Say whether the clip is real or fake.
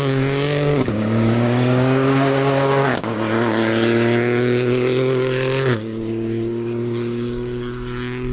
fake